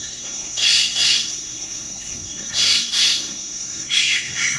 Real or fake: fake